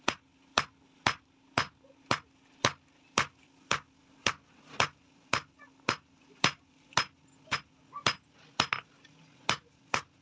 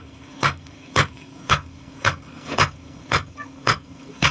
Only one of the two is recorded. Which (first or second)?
first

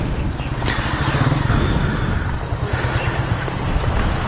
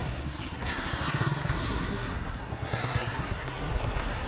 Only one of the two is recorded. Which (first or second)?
first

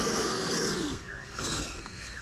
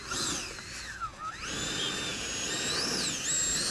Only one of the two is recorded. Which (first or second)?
second